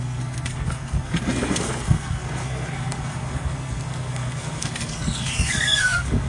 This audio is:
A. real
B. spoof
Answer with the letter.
B